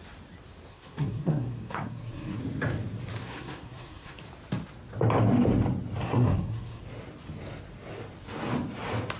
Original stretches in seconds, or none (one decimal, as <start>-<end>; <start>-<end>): 0.0-0.7; 2.4-3.2; 4.2-6.0; 6.8-9.2

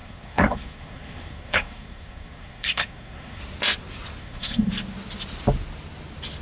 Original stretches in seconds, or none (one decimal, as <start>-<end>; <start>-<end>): 3.4-4.2; 4.7-6.4

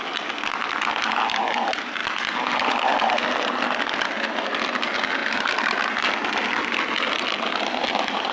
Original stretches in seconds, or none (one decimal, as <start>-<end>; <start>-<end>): 0.0-8.3